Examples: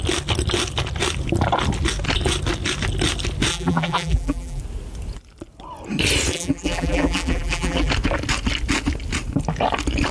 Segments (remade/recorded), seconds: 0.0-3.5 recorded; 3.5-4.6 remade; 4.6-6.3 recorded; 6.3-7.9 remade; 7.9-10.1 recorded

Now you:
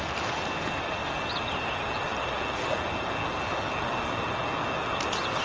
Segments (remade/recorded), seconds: 0.0-5.4 recorded